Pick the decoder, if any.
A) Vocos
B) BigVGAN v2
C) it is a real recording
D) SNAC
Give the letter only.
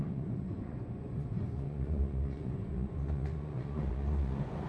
A